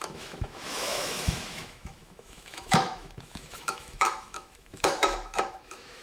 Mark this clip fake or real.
fake